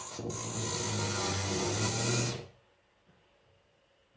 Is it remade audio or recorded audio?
recorded